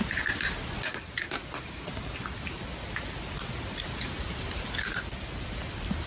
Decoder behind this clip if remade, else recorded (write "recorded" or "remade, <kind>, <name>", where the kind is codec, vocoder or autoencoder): recorded